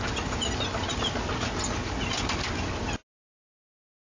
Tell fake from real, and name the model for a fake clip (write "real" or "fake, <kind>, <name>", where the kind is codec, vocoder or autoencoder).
real